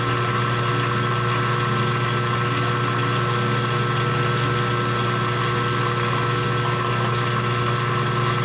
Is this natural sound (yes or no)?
yes